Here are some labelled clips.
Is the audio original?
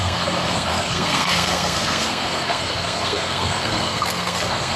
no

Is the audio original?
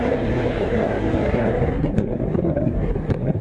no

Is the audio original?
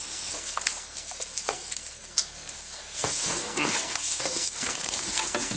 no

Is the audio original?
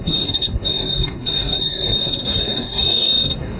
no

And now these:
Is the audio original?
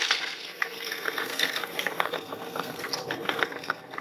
no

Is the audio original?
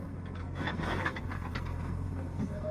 no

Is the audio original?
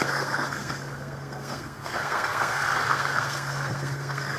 no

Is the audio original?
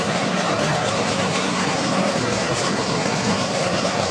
no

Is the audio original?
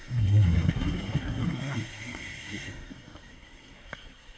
no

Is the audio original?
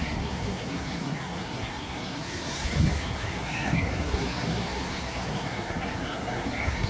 no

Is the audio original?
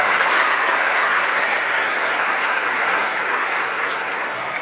no